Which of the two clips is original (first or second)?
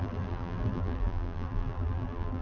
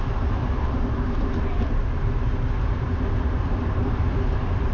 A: second